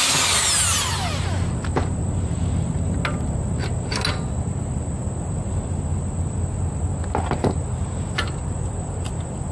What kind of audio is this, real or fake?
real